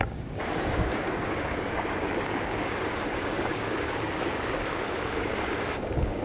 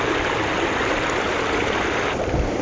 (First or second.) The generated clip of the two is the first